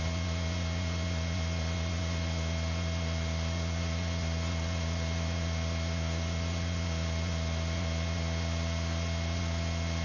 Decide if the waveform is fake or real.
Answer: real